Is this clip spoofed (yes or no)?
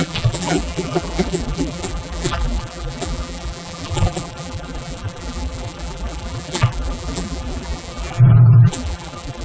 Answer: yes